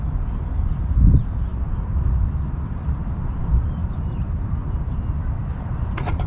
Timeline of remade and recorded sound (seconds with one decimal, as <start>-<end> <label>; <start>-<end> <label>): 0.0-3.8 recorded; 3.8-4.6 remade; 4.6-5.5 recorded; 5.5-6.3 remade